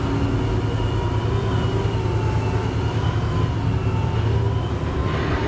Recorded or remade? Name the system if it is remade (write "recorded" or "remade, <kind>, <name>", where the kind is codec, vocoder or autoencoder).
recorded